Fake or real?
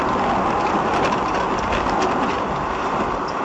real